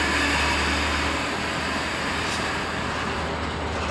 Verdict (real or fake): real